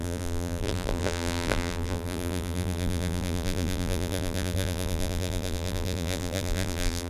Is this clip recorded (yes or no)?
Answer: no